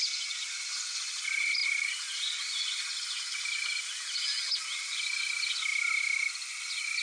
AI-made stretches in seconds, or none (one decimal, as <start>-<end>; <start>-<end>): none